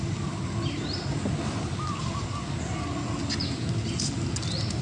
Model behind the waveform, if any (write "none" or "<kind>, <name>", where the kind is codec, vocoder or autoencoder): none